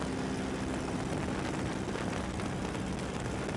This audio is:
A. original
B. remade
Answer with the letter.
A